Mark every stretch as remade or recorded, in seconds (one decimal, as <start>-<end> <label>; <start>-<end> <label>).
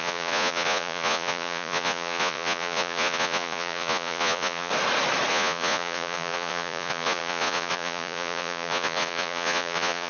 0.0-4.7 remade; 4.7-5.3 recorded; 5.3-10.1 remade